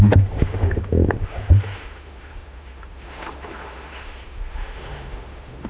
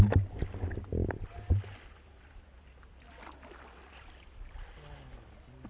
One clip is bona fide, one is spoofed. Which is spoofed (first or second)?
first